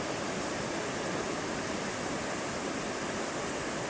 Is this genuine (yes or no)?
yes